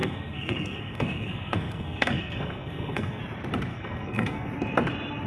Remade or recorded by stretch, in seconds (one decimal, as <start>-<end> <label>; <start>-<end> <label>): 0.0-3.2 remade; 3.2-3.7 recorded; 3.7-4.5 remade; 4.5-5.3 recorded